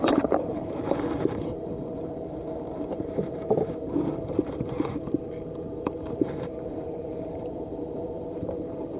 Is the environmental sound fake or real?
fake